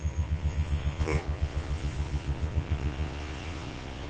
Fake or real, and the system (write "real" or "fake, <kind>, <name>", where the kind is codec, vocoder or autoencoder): fake, vocoder, Vocos